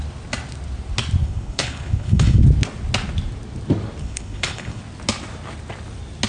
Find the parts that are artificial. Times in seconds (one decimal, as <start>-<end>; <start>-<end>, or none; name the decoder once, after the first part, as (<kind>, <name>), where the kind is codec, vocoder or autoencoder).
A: 1.2-2.4 (codec, HILCodec); 4.0-4.8